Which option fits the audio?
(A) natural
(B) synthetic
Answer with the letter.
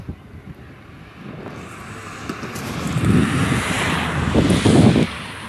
A